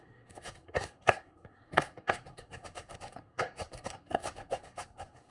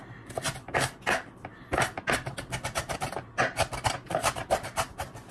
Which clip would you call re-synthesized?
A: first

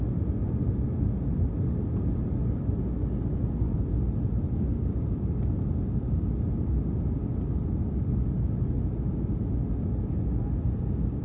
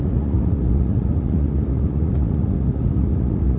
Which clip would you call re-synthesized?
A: second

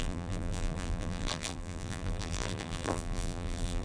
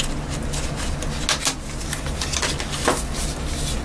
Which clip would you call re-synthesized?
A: first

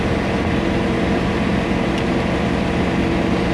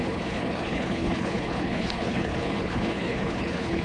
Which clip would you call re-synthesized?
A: second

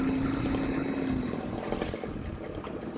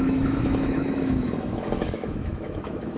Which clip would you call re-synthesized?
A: second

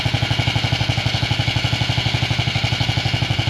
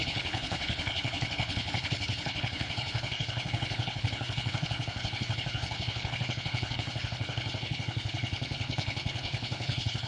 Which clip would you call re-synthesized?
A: second